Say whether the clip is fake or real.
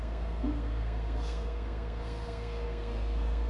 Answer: fake